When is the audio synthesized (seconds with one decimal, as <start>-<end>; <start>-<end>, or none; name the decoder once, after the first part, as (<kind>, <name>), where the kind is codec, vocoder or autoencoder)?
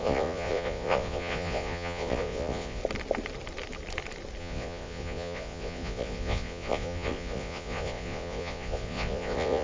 0.0-2.8 (vocoder, Vocos); 4.4-9.6